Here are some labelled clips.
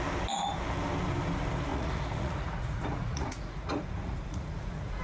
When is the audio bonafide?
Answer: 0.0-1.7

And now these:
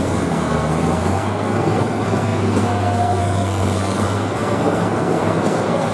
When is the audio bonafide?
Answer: none

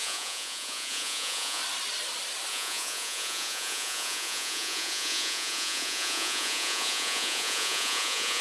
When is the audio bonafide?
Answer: 1.6-2.5

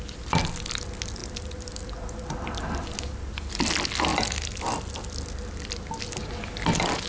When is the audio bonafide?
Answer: 0.0-7.1